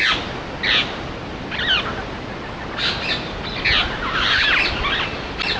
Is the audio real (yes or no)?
yes